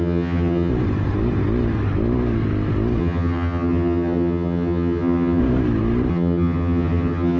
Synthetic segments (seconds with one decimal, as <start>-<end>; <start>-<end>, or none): 0.0-0.7; 3.0-5.4; 6.1-7.4